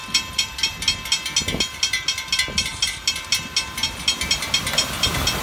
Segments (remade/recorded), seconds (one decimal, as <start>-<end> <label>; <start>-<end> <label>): 0.0-5.4 recorded